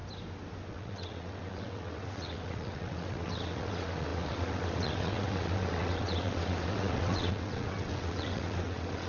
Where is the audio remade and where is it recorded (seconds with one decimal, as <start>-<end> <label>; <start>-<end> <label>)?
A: 0.0-0.7 recorded; 0.7-9.1 remade